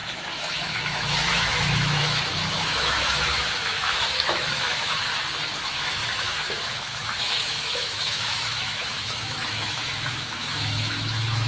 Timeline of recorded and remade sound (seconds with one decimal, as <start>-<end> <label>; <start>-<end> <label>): 0.0-5.0 remade; 5.0-5.6 recorded; 5.6-11.5 remade